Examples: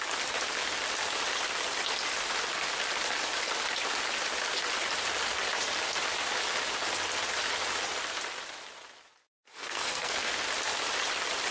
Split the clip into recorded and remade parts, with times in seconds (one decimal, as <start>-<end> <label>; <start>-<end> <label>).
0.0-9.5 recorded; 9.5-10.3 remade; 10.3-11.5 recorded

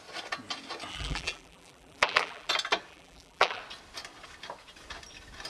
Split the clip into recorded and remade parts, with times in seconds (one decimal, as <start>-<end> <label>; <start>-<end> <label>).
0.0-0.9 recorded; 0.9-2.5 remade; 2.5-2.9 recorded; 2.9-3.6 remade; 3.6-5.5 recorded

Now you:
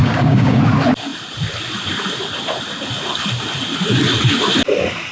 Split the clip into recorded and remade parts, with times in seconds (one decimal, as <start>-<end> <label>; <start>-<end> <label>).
0.0-0.6 remade; 0.6-5.1 recorded

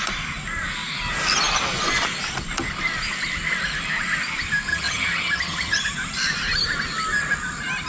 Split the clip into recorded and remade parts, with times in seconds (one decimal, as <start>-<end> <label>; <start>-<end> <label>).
0.0-4.7 recorded; 4.7-5.8 remade; 5.8-7.9 recorded

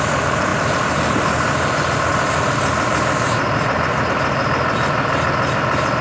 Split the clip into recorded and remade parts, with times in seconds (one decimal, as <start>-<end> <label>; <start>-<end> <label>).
0.0-6.0 recorded